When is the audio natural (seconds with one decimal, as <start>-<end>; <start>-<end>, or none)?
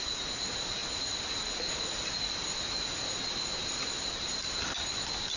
0.0-5.4